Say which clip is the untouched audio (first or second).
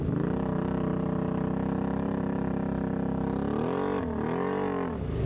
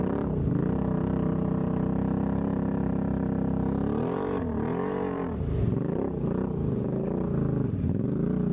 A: first